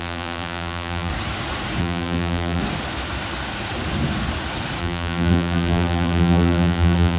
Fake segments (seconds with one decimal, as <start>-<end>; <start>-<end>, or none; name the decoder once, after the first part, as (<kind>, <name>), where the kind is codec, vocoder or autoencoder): 0.0-1.1 (vocoder, BigVGAN v2); 1.8-2.6; 4.8-7.2